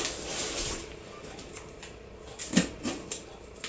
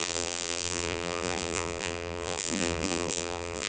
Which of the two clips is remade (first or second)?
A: second